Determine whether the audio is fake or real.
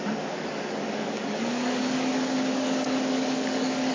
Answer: fake